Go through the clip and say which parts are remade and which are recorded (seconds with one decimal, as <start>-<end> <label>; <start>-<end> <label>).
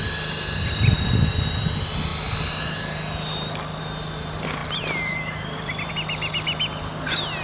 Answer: 0.0-4.6 recorded; 4.6-5.9 remade; 5.9-7.4 recorded